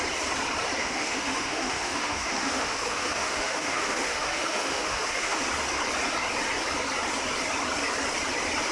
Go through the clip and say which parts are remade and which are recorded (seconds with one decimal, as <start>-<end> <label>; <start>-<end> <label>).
0.0-0.8 recorded; 0.8-5.4 remade; 5.4-8.7 recorded